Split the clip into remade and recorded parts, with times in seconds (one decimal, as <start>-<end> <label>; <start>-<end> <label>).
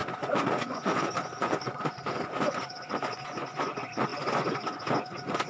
0.0-5.5 remade